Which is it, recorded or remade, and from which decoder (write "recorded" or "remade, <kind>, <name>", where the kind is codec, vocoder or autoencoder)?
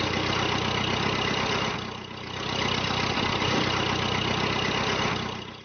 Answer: recorded